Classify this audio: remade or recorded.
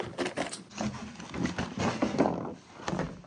recorded